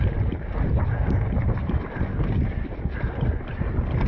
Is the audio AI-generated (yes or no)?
no